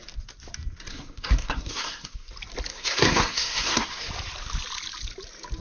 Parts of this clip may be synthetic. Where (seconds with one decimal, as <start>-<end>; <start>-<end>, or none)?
0.9-2.3; 2.7-4.1